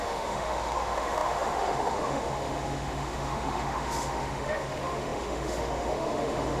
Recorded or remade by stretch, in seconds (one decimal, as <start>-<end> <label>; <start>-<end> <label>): 0.0-6.6 remade